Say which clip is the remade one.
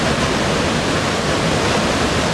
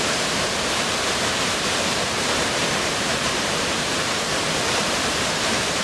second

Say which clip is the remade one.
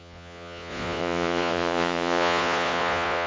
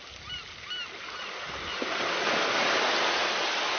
first